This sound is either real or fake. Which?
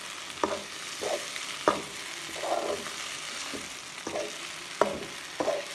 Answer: real